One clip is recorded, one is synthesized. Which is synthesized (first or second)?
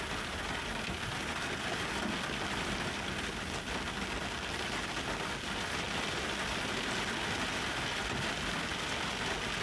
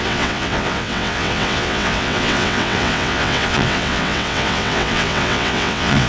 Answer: second